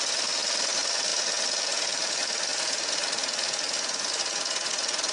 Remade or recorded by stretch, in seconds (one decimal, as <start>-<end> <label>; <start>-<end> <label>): 0.0-5.1 recorded